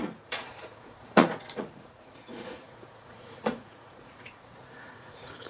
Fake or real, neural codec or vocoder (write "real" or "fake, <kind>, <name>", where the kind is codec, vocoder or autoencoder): fake, vocoder, Vocos